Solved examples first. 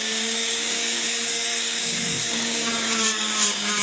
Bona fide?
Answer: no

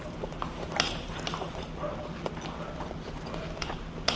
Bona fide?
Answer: no